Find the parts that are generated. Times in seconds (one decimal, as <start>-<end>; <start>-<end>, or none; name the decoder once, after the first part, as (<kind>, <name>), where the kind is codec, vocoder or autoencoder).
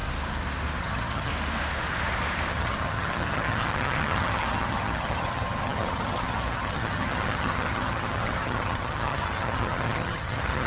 0.8-1.3 (vocoder, HiFi-GAN); 2.5-10.7